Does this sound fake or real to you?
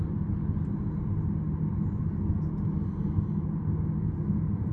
real